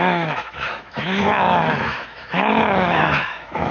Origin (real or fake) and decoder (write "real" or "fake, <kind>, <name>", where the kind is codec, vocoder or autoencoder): fake, autoencoder, DAC-VAE